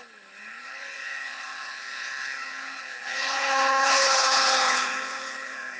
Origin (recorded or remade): remade